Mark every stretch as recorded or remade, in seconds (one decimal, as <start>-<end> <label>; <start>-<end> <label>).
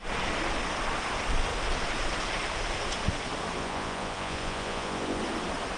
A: 0.0-3.6 recorded; 3.6-5.2 remade; 5.2-5.8 recorded